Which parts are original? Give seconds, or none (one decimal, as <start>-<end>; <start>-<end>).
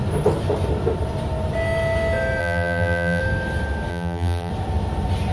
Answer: 0.0-2.4; 3.2-3.9; 4.5-5.3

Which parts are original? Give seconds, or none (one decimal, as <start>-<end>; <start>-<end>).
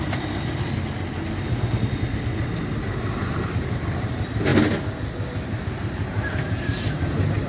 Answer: 0.0-7.5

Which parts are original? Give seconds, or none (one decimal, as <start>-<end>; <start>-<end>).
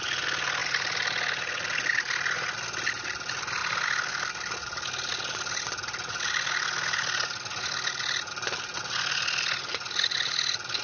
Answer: 0.0-10.8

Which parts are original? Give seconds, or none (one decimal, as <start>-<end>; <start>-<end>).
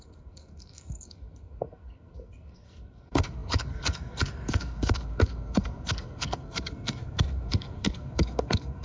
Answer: none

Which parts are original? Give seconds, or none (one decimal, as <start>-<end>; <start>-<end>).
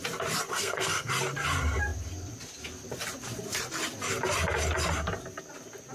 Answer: 0.0-0.5; 1.1-5.9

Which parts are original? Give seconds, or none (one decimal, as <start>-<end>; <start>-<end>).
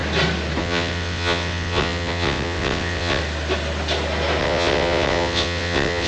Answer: 0.0-0.6; 3.2-4.4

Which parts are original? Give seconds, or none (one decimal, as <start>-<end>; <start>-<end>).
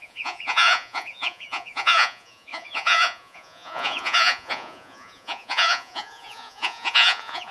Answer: none